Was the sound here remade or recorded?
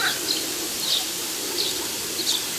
recorded